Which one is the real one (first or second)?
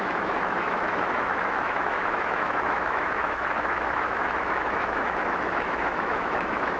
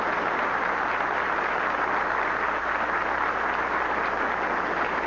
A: second